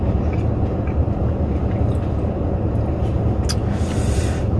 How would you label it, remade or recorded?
recorded